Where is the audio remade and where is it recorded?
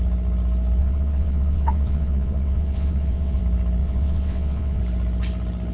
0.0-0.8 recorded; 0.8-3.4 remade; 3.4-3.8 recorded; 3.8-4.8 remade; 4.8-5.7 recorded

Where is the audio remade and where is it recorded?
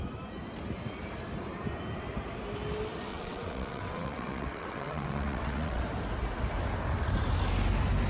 0.0-3.1 recorded; 3.1-5.8 remade; 5.8-8.1 recorded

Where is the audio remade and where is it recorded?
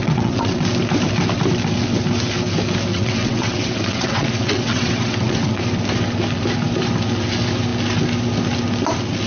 0.0-0.6 remade; 0.6-2.9 recorded; 2.9-5.6 remade; 5.6-9.3 recorded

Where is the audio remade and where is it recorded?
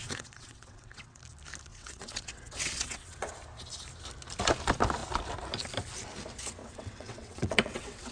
0.0-1.2 remade; 1.2-1.7 recorded; 1.7-3.3 remade; 3.3-6.6 recorded; 6.6-8.1 remade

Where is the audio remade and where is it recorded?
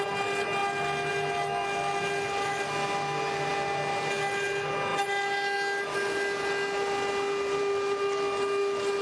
0.0-9.0 recorded